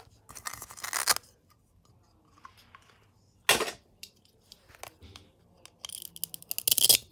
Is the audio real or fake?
real